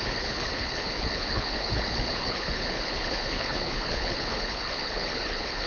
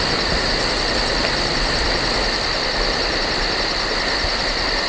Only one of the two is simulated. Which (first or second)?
first